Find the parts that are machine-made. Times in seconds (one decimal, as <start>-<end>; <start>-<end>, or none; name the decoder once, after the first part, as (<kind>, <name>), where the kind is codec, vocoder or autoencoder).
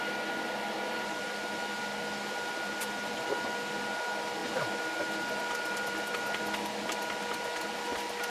none